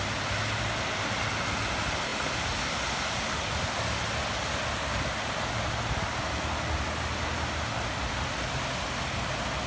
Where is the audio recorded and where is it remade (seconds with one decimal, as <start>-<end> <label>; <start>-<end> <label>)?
0.0-9.7 recorded